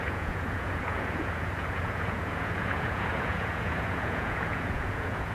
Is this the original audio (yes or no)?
no